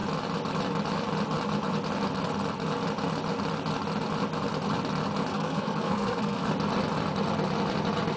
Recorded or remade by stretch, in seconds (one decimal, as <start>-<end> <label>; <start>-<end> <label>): 0.0-5.3 recorded; 5.3-6.4 remade; 6.4-8.2 recorded

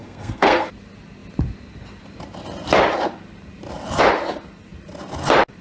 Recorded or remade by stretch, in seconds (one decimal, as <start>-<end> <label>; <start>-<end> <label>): 0.0-0.7 remade; 0.7-5.6 recorded

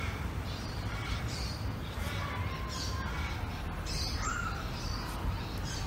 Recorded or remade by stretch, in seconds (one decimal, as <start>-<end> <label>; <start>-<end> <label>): 0.0-1.8 remade; 1.8-4.0 recorded; 4.0-5.9 remade

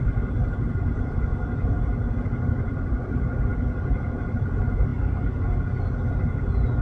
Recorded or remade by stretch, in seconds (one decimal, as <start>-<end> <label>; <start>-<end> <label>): 0.0-1.3 remade; 1.3-2.2 recorded; 2.2-4.9 remade; 4.9-6.8 recorded

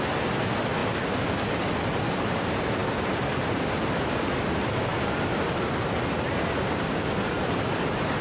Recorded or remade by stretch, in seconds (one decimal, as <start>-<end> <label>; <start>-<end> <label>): 0.0-8.2 recorded